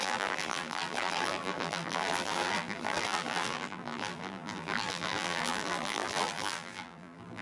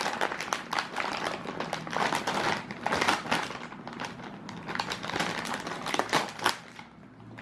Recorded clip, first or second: second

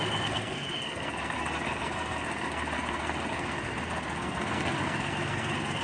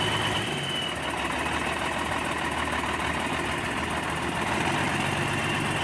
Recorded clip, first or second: second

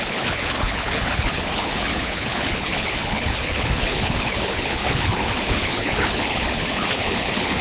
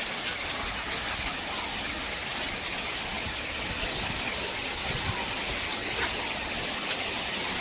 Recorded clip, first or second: second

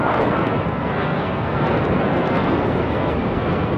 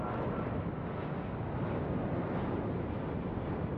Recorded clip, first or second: second